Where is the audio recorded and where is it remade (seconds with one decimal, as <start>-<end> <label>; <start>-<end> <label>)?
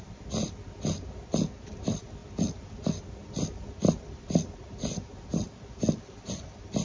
0.0-6.8 recorded